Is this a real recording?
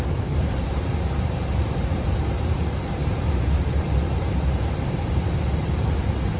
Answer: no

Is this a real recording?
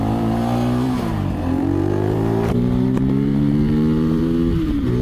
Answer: no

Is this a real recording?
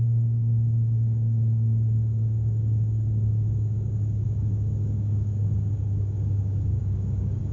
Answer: no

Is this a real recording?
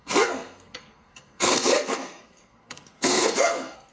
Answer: no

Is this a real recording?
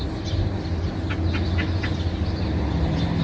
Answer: yes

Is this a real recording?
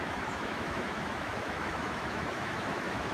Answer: no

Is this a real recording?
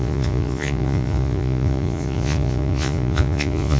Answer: no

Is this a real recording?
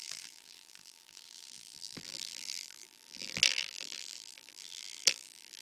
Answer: no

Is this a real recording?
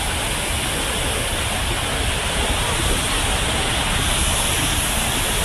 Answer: yes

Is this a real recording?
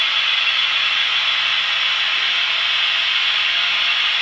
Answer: yes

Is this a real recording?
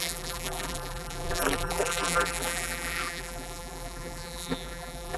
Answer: no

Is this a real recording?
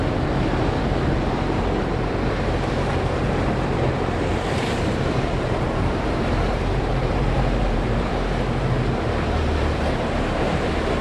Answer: no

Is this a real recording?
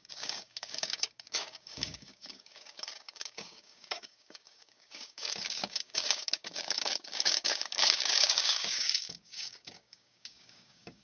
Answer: no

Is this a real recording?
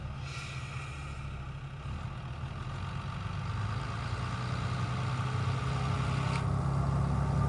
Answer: yes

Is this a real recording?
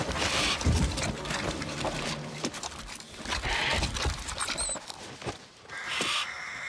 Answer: no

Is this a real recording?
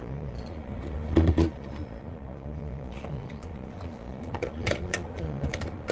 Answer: no